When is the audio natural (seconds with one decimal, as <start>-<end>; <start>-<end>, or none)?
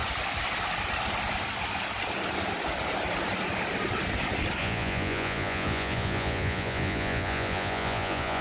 0.0-4.6